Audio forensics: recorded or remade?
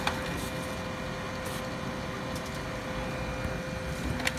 recorded